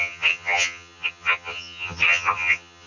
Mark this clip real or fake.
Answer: fake